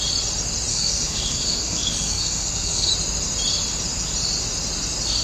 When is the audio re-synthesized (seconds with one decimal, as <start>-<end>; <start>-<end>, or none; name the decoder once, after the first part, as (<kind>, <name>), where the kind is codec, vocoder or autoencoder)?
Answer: 0.7-2.9 (codec, SNAC)

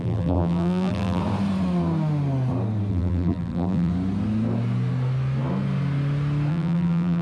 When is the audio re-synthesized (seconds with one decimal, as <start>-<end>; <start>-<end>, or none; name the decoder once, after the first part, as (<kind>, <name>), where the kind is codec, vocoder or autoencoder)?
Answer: 0.0-1.2 (vocoder, BigVGAN v2); 2.9-3.9; 6.5-7.2

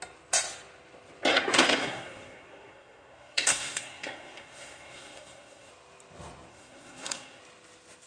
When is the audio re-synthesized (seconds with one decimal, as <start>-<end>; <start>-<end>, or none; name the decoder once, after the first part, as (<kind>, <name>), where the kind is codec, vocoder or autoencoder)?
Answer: 1.3-5.7 (codec, SNAC); 6.5-7.4

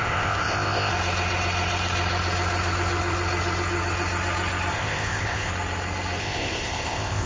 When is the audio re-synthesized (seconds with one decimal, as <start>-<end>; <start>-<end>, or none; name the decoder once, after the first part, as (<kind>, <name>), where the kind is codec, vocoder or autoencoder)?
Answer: 0.0-0.9 (codec, ZipCodec); 4.7-5.5; 6.2-7.3